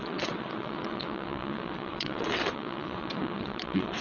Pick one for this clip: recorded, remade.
remade